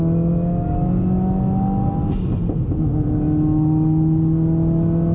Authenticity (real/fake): real